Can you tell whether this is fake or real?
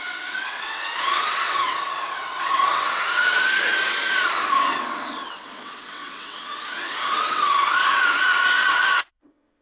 fake